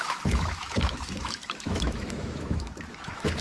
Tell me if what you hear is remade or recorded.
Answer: remade